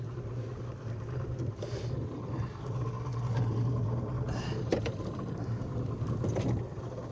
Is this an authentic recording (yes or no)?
yes